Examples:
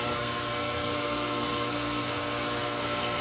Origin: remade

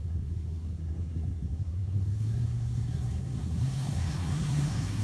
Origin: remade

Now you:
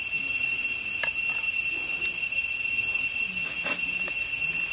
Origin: recorded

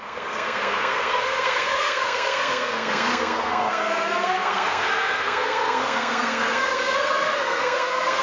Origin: remade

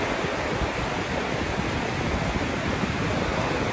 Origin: recorded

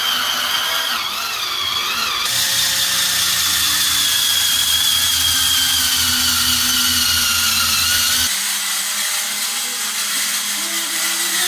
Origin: recorded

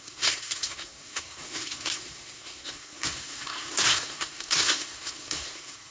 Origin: remade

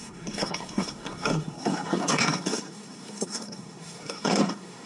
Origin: remade